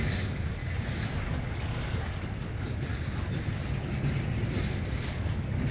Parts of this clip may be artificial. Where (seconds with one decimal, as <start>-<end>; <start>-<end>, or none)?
0.0-0.6; 1.2-2.9; 5.1-5.7